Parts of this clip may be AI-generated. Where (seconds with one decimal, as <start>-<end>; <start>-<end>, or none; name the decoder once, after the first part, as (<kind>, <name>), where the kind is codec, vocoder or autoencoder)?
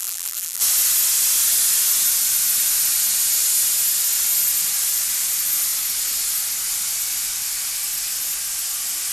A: 0.0-0.6 (vocoder, BigVGAN v2)